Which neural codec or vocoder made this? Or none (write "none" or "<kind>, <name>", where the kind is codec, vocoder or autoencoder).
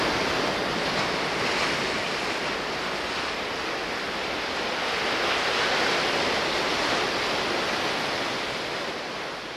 none